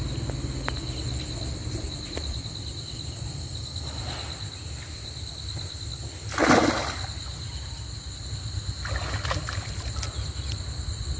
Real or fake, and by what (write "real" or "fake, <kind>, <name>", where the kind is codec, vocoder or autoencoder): real